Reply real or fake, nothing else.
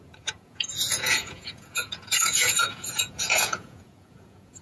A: fake